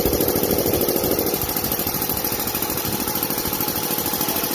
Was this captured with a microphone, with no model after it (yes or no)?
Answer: yes